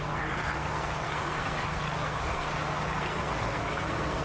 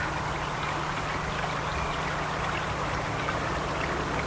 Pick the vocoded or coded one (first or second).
first